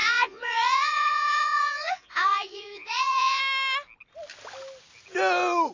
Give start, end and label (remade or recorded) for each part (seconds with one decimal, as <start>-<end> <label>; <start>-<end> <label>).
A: 0.0-3.4 remade; 3.4-5.7 recorded